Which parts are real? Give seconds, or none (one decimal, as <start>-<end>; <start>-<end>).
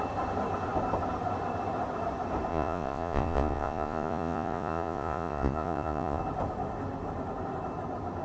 0.0-2.5; 6.2-8.2